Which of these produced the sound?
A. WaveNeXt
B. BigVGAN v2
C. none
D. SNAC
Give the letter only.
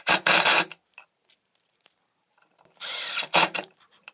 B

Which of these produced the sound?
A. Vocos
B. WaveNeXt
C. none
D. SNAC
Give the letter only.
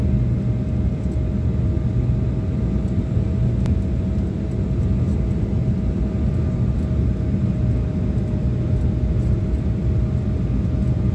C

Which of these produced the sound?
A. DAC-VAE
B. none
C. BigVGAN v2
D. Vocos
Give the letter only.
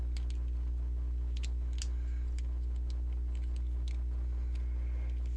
B